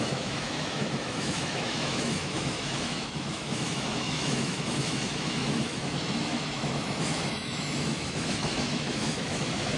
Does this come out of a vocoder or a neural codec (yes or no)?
yes